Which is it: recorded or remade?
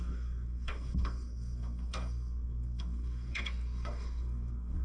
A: remade